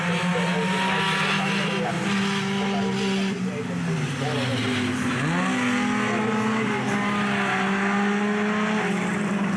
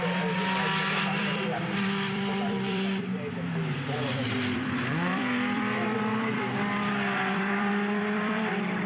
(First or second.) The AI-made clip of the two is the second